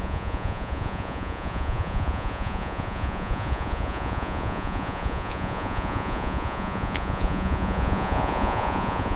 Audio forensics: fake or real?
fake